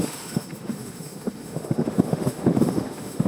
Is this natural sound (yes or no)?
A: no